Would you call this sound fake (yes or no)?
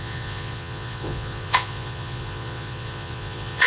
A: yes